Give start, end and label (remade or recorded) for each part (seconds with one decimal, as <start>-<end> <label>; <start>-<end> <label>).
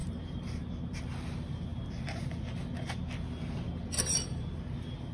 0.0-1.1 remade; 1.1-5.1 recorded